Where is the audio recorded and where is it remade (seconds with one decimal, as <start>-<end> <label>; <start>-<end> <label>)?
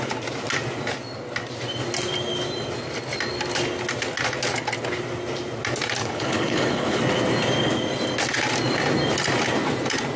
0.0-6.0 recorded; 6.0-7.0 remade; 7.0-10.2 recorded